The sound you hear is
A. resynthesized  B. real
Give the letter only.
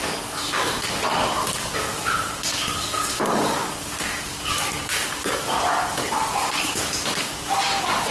A